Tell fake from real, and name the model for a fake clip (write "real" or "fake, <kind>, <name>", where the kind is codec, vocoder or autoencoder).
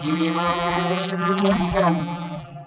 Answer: fake, vocoder, BigVGAN v2